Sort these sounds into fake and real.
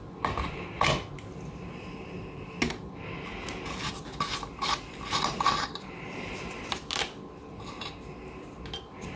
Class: real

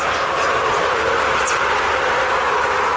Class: real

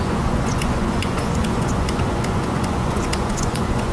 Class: fake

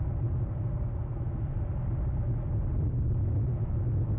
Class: real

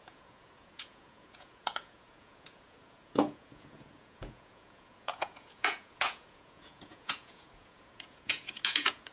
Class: fake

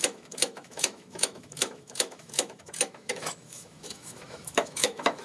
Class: fake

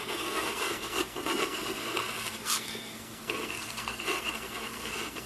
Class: fake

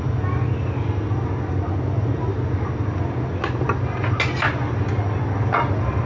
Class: real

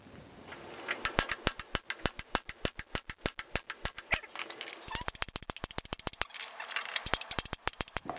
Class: real